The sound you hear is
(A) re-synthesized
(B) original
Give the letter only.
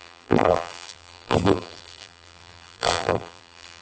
A